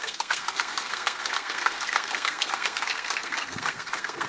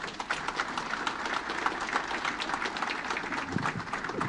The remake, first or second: first